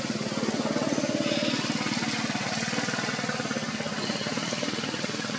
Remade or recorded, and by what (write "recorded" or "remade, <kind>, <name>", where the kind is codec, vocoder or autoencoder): recorded